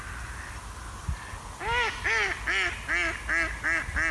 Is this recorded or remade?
recorded